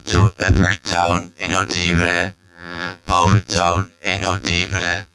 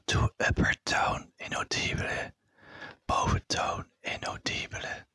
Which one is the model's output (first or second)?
first